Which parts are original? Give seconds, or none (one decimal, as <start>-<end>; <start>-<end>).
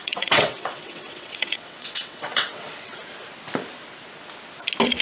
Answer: 3.0-5.0